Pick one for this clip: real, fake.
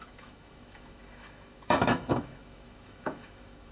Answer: fake